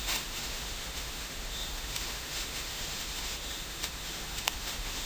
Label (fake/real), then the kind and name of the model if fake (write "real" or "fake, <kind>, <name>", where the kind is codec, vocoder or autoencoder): fake, autoencoder, DAC-VAE